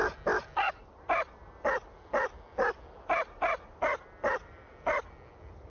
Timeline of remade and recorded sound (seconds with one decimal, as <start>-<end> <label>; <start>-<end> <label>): 0.0-5.7 recorded